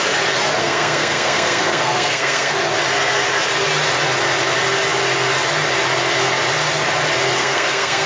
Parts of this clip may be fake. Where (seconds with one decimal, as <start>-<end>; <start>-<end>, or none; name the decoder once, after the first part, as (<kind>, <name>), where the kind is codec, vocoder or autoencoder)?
0.6-2.6 (codec, SNAC); 7.4-8.1